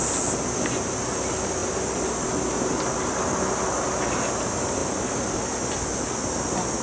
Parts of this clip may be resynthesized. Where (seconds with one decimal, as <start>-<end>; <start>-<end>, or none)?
none